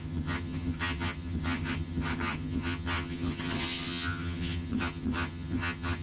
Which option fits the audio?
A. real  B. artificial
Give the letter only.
B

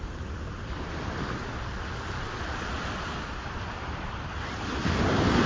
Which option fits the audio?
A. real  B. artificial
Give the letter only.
A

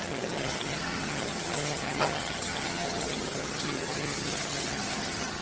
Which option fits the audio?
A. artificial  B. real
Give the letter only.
A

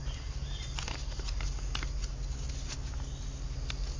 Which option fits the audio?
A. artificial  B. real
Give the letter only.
B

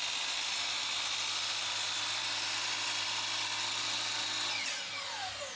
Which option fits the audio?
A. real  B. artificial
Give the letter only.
A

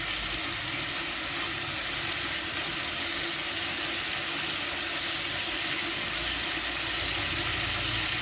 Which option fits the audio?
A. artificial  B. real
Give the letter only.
B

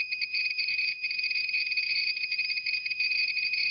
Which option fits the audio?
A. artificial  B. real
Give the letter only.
A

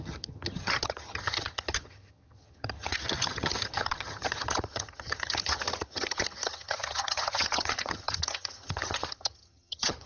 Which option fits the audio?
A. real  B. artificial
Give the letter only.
B